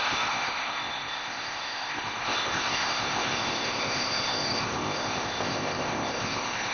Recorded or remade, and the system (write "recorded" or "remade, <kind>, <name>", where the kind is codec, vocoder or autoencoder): remade, codec, ZipCodec